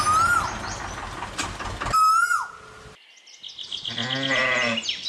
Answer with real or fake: real